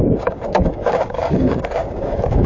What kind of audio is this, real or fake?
fake